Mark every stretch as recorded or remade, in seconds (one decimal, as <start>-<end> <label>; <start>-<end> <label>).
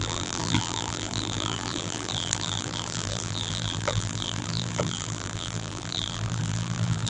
0.0-7.1 remade